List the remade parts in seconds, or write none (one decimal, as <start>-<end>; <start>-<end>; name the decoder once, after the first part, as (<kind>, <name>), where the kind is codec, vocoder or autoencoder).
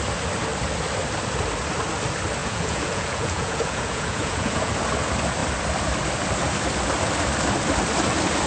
2.4-4.7 (vocoder, Vocos)